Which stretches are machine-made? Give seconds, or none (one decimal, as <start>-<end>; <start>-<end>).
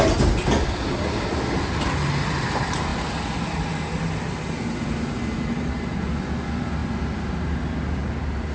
none